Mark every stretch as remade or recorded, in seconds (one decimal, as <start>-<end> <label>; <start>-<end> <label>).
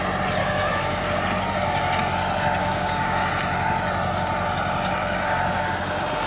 0.0-0.4 recorded; 0.4-1.2 remade; 1.2-2.6 recorded; 2.6-3.3 remade; 3.3-5.0 recorded; 5.0-5.8 remade; 5.8-6.3 recorded